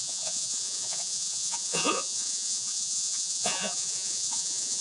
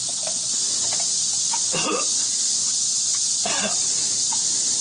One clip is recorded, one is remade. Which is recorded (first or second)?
second